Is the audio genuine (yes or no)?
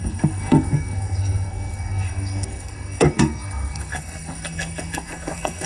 no